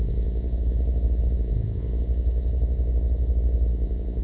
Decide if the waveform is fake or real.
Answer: fake